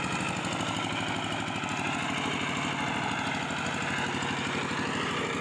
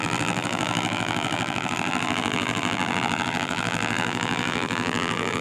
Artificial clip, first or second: second